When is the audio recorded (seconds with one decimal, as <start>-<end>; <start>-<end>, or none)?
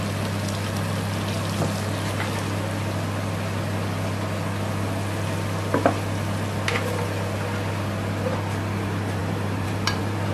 0.0-9.2